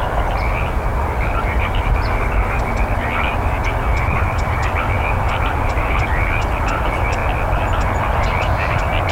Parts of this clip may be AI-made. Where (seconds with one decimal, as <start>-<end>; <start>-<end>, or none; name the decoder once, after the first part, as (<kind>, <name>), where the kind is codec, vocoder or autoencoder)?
0.9-2.3 (vocoder, BigVGAN v2); 3.9-5.8